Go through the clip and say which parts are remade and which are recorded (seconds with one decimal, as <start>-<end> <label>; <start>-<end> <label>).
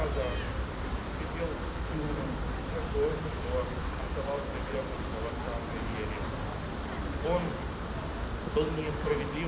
0.0-9.5 recorded